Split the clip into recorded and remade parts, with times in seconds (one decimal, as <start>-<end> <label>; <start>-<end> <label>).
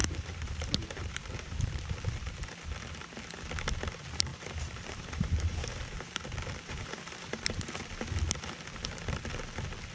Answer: 0.0-1.8 remade; 1.8-4.3 recorded; 4.3-7.7 remade; 7.7-9.9 recorded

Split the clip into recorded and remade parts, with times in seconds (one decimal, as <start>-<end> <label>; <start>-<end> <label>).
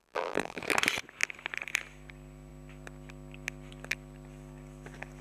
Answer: 0.0-0.6 remade; 0.6-5.2 recorded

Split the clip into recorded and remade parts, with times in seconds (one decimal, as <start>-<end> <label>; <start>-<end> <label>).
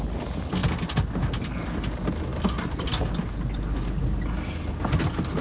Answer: 0.0-5.4 recorded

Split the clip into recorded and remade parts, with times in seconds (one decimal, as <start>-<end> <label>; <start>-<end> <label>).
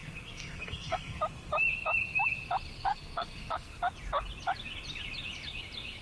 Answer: 0.0-1.2 remade; 1.2-2.9 recorded; 2.9-3.8 remade; 3.8-6.0 recorded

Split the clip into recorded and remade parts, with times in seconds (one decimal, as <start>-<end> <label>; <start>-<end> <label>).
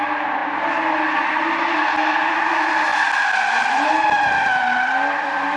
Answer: 0.0-5.6 recorded